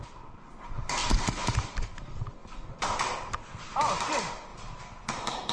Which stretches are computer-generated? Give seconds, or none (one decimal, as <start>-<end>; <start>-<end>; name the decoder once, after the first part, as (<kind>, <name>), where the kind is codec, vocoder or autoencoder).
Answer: none